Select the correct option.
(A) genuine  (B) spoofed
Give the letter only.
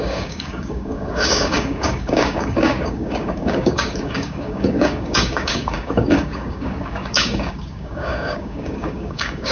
B